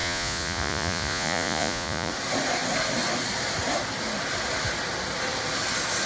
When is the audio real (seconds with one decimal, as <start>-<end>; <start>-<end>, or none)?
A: 2.1-6.1